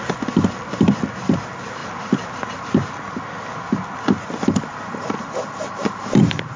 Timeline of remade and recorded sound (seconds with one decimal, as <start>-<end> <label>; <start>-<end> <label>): 0.0-1.8 remade; 1.8-4.1 recorded; 4.1-6.6 remade